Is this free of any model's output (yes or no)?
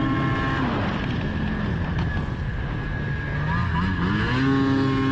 yes